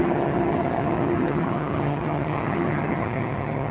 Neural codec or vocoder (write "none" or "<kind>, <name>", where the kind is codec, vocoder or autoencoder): vocoder, HiFi-GAN